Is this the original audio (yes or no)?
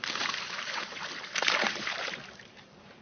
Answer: no